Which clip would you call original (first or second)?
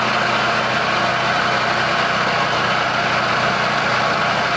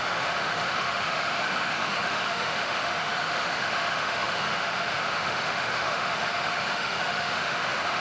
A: first